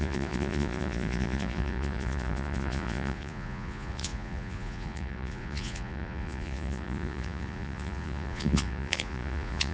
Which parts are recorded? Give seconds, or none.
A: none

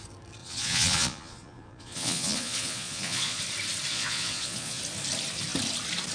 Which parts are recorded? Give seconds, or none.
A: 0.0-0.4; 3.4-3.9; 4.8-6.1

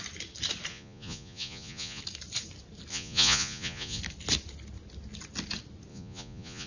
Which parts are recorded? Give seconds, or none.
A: 0.0-0.7; 2.0-2.9; 4.0-5.9

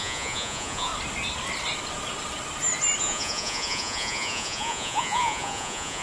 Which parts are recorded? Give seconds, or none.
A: 0.9-3.0

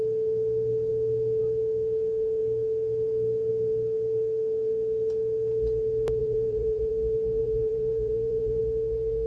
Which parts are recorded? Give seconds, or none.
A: 0.0-6.2; 6.9-7.4; 8.6-9.3

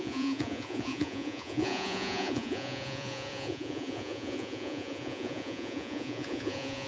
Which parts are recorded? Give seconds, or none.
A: none

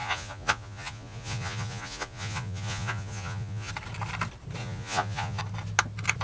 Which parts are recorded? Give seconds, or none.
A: 3.7-4.6; 5.4-6.2

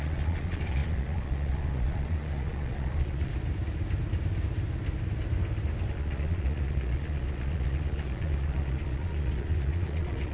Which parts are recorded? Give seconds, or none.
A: 3.3-5.9